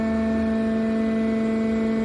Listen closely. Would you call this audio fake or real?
real